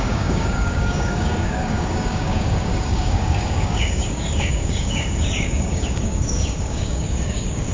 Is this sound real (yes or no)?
no